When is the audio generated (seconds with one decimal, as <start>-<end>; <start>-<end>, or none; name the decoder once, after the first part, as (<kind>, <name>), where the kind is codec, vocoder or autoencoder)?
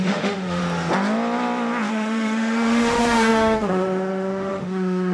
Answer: 0.0-0.6 (autoencoder, DAC-VAE); 1.9-5.1